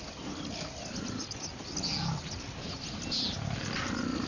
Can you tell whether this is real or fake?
real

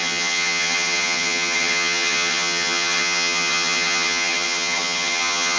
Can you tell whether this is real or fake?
fake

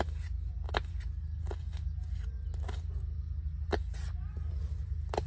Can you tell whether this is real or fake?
real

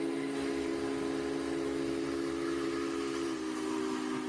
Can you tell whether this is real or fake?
real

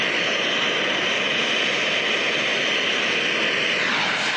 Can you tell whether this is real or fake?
real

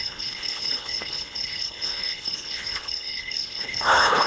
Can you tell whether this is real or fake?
fake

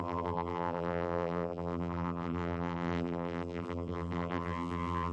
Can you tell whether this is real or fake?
fake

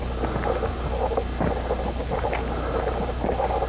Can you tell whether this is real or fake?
real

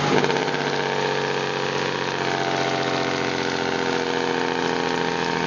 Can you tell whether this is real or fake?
real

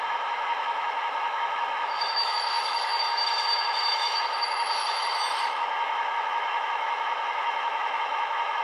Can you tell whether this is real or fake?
fake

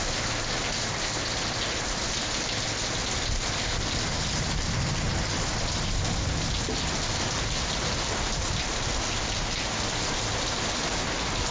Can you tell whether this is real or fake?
real